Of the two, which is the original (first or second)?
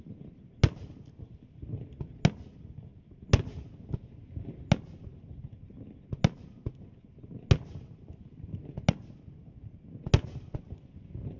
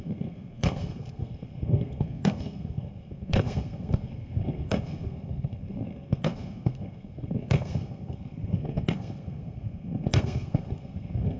first